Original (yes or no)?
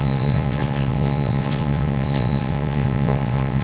no